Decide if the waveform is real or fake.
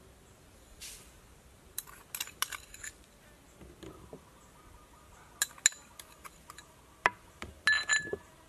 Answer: real